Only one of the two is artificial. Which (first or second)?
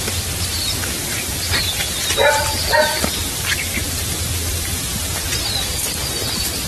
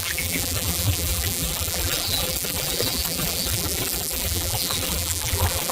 second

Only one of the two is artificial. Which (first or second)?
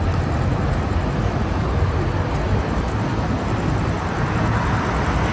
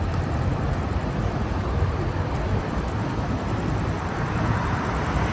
second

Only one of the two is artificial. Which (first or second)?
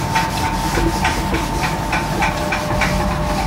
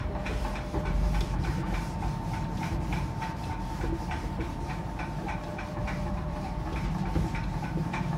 second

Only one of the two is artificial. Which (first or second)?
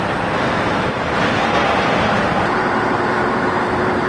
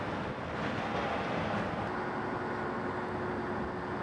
first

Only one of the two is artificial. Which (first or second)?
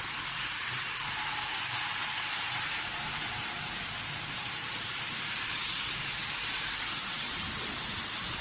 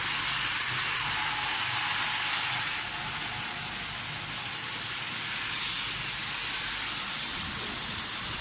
first